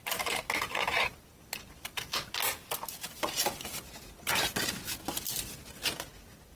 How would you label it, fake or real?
real